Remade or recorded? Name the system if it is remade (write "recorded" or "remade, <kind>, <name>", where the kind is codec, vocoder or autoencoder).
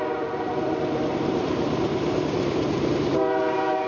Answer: remade, vocoder, BigVGAN v2